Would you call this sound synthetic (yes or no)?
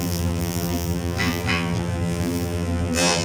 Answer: yes